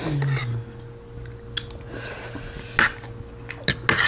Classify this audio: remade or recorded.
recorded